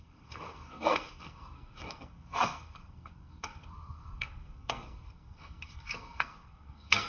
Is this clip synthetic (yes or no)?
yes